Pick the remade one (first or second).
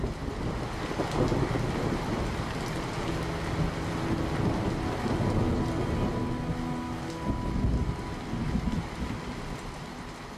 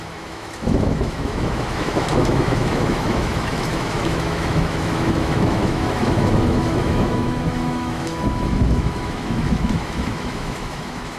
second